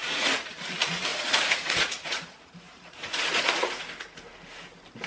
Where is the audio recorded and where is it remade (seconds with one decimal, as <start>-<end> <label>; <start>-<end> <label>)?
0.0-0.7 remade; 0.7-1.1 recorded; 1.1-4.2 remade; 4.2-5.1 recorded